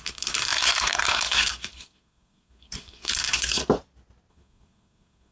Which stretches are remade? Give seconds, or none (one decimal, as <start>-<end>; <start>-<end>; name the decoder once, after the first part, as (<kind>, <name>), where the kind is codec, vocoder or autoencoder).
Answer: 0.0-3.6 (codec, SNAC); 4.3-5.3